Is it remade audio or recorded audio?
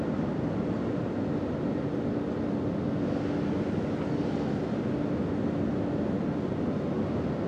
recorded